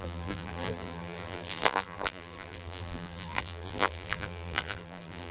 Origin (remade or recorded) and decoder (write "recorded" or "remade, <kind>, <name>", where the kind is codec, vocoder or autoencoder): remade, vocoder, BigVGAN v2